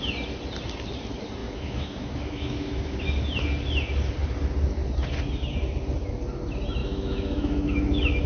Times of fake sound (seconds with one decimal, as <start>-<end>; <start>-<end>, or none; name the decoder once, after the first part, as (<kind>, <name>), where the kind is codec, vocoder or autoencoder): 1.4-3.0 (autoencoder, DAC-VAE); 6.8-8.3